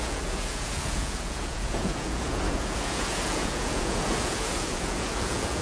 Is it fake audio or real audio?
fake